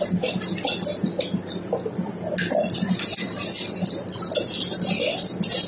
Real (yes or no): yes